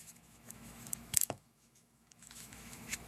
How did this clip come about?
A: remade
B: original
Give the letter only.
A